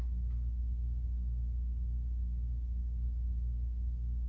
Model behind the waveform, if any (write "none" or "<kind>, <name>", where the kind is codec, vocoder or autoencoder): none